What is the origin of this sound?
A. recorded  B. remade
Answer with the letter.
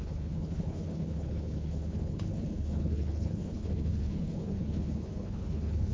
B